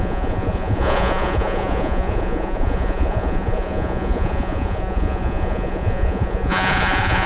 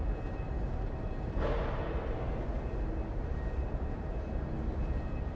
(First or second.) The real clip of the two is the second